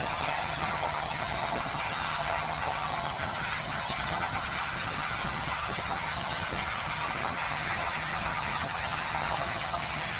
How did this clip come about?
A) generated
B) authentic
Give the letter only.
A